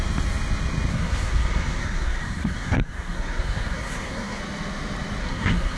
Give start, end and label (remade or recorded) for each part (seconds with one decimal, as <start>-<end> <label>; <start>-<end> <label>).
0.0-0.9 recorded; 0.9-4.4 remade; 4.4-5.2 recorded; 5.2-5.8 remade